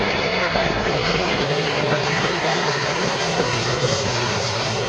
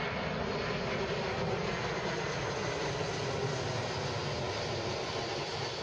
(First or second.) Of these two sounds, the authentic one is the second